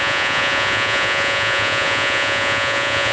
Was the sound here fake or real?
fake